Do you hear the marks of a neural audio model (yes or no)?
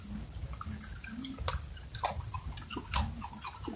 no